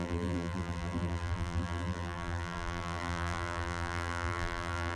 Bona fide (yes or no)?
no